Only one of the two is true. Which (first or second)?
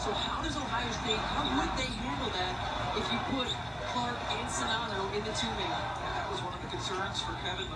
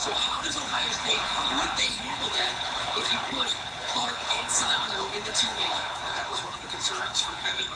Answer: first